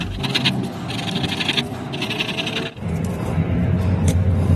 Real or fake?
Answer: real